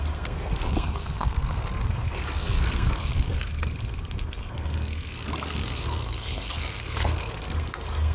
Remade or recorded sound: remade